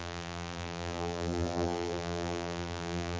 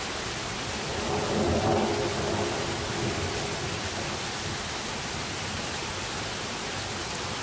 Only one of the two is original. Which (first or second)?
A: second